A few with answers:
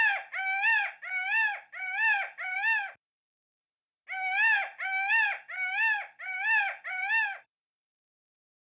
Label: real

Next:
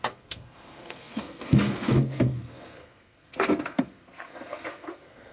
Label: fake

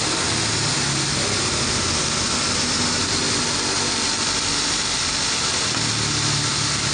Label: real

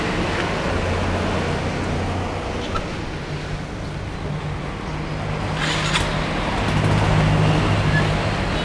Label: real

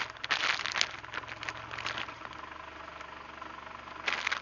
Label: real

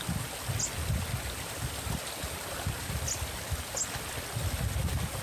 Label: real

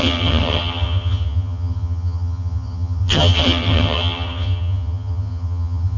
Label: fake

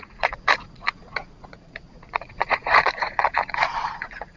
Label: fake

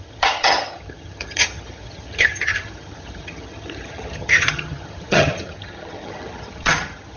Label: fake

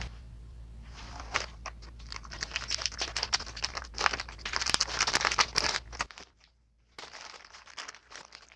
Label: real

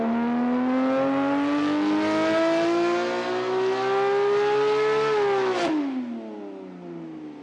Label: real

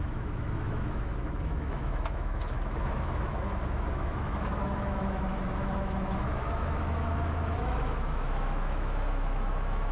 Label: fake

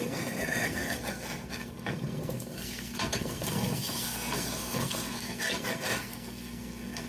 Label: fake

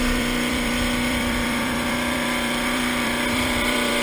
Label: fake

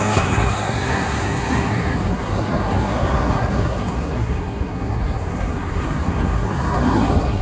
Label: fake